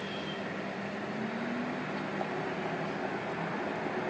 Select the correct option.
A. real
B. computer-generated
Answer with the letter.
A